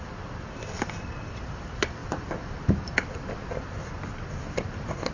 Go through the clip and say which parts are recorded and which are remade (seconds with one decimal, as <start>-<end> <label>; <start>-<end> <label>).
0.0-5.1 recorded